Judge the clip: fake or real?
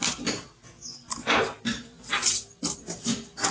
real